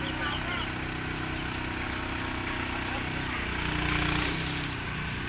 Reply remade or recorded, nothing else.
recorded